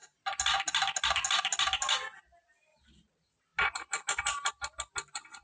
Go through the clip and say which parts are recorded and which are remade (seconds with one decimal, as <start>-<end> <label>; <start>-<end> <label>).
0.0-5.4 recorded